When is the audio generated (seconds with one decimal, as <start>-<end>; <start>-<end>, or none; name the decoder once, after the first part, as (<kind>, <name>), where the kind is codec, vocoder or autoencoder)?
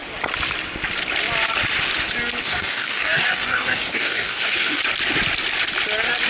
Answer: 2.4-4.8 (codec, DAC)